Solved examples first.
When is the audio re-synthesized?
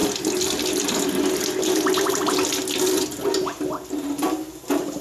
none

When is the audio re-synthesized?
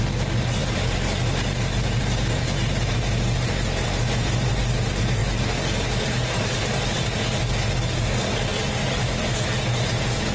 none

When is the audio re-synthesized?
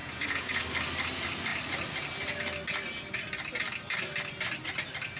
0.0-0.6 (vocoder, Vocos)